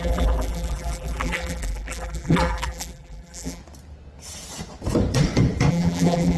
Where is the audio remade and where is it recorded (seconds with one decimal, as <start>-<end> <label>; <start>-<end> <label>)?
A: 0.0-3.6 remade; 3.6-5.7 recorded; 5.7-6.4 remade